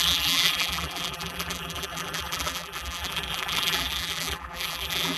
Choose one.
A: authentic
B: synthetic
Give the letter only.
B